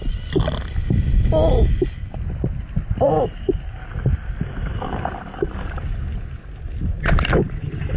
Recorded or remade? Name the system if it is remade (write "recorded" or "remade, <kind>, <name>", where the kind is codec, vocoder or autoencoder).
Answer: recorded